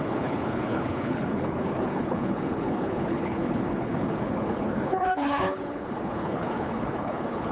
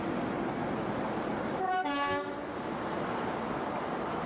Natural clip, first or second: second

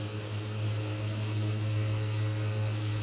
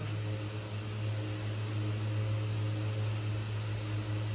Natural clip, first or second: second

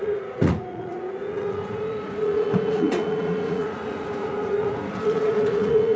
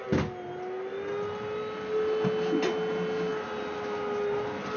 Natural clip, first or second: second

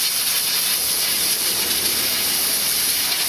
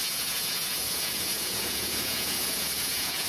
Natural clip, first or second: first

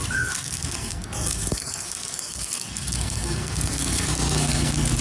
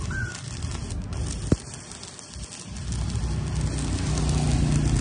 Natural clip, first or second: second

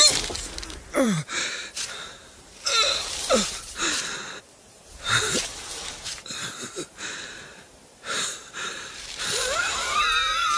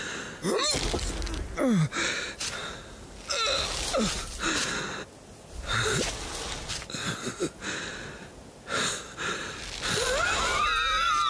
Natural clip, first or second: second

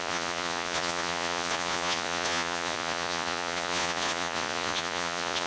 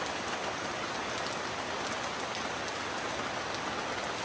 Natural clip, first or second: second